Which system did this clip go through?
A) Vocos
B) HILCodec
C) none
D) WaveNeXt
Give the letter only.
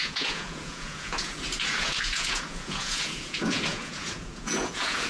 A